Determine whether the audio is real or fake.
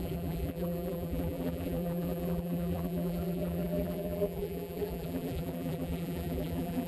fake